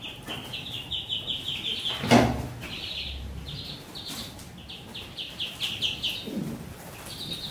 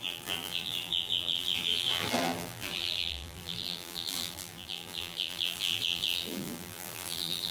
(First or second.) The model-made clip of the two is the second